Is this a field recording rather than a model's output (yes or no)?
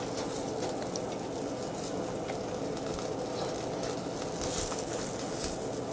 yes